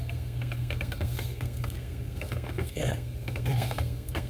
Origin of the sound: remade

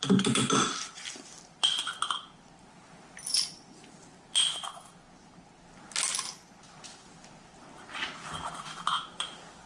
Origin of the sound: recorded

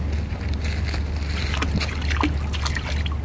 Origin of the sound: recorded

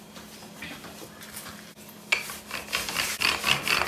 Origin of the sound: recorded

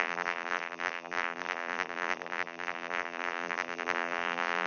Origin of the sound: remade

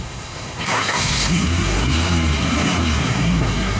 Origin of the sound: remade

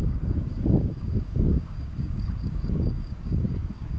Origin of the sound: remade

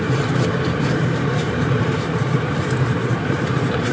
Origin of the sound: remade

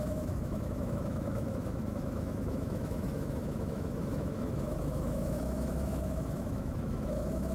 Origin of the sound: remade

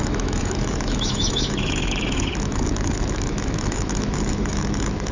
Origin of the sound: remade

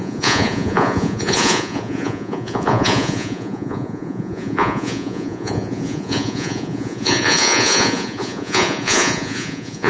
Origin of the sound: remade